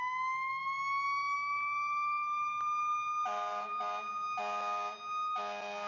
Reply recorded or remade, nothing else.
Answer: recorded